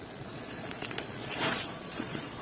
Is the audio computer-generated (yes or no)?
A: yes